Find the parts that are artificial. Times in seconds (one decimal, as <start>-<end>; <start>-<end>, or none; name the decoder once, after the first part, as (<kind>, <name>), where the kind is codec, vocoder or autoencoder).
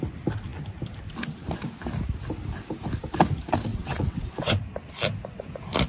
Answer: 3.7-4.6 (vocoder, WaveNeXt)